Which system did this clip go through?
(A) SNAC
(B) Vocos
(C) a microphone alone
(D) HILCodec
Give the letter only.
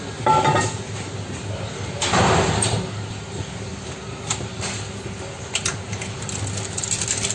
C